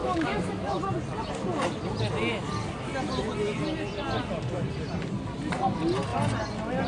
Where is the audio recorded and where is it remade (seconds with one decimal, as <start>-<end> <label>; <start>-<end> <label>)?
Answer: 0.0-0.8 remade; 0.8-6.9 recorded